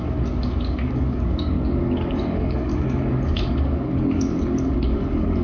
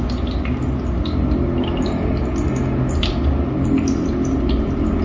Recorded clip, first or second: second